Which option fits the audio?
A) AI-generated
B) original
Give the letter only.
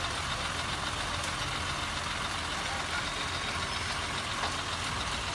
B